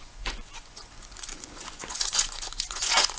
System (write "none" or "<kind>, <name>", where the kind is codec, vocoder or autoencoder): vocoder, Vocos